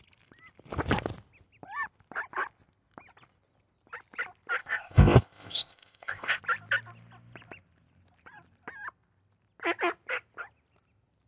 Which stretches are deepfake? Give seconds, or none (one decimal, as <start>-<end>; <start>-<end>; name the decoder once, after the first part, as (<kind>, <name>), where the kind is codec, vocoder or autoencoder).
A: 4.6-6.4 (codec, ZipCodec)